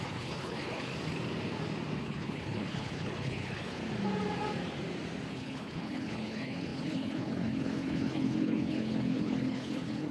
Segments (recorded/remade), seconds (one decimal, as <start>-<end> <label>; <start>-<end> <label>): 0.0-0.9 remade; 0.9-2.0 recorded; 2.0-3.8 remade; 3.8-5.3 recorded; 5.3-10.1 remade